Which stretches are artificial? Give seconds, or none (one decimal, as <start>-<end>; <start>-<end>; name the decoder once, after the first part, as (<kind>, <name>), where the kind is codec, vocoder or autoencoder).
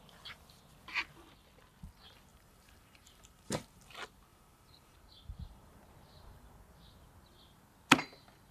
2.3-3.9 (vocoder, BigVGAN v2); 4.3-5.8